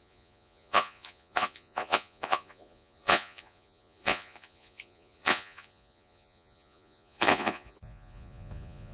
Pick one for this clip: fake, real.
fake